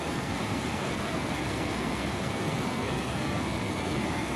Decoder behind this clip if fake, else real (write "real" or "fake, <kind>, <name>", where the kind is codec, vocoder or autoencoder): fake, codec, SNAC